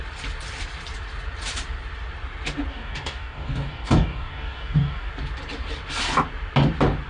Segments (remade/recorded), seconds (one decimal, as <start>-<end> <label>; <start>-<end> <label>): 0.0-2.7 recorded; 2.7-5.1 remade; 5.1-7.1 recorded

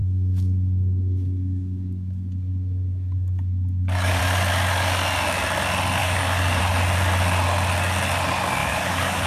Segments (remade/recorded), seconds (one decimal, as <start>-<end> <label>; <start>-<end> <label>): 0.0-4.2 remade; 4.2-6.0 recorded; 6.0-6.6 remade; 6.6-8.6 recorded; 8.6-9.3 remade

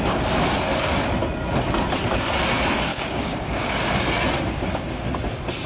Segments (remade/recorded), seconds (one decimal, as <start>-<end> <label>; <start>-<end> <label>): 0.0-2.9 recorded; 2.9-3.9 remade; 3.9-5.7 recorded

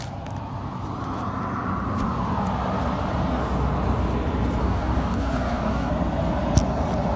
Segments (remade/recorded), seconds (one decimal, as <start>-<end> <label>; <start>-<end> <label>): 0.0-4.6 recorded; 4.6-5.9 remade; 5.9-7.2 recorded

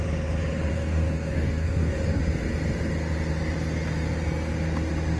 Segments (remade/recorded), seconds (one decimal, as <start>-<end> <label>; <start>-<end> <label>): 0.0-0.7 recorded; 0.7-2.2 remade; 2.2-5.2 recorded

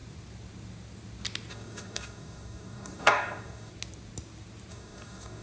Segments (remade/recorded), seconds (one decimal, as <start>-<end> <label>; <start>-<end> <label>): 0.0-1.5 recorded; 1.5-3.7 remade; 3.7-4.7 recorded; 4.7-5.4 remade

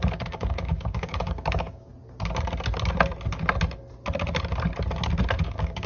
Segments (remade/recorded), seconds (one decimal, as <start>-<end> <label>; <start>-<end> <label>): 0.0-1.9 remade; 1.9-5.4 recorded; 5.4-5.9 remade